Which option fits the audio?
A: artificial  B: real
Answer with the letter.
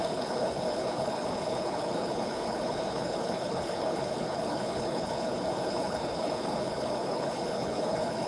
A